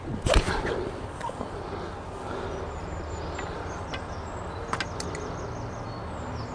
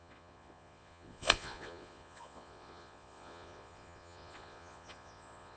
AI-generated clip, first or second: second